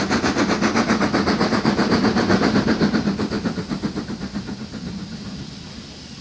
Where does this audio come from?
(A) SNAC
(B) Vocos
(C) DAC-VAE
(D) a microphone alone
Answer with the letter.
D